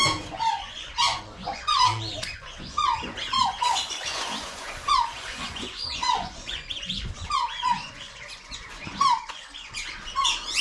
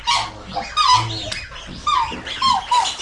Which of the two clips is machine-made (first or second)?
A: first